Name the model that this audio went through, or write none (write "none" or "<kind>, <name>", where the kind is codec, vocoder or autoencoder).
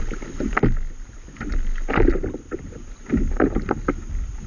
none